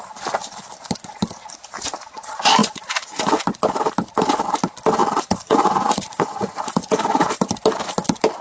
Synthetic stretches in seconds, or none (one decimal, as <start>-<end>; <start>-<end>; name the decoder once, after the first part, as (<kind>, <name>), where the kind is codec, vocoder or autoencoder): 2.6-3.3 (vocoder, Vocos); 5.0-7.5